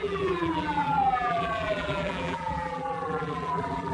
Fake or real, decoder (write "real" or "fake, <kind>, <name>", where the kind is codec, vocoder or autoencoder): fake, vocoder, BigVGAN v2